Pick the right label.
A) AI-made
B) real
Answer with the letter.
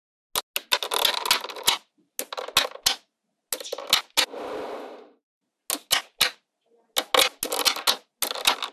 B